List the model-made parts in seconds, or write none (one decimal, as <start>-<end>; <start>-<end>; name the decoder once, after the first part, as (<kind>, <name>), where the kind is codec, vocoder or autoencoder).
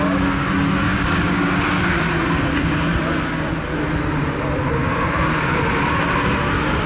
0.0-2.9 (codec, DAC)